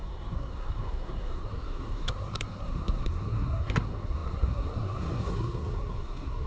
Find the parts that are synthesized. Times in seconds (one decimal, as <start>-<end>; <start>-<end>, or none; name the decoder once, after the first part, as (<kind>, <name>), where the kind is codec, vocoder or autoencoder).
0.0-6.5 (codec, SNAC)